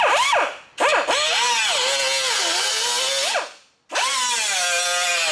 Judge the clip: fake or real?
real